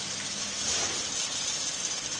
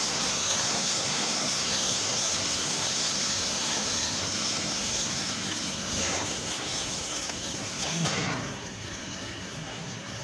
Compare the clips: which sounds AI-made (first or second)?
second